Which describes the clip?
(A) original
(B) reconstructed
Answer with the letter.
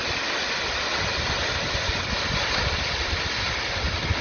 A